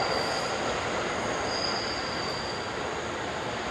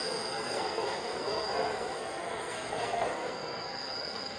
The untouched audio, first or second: first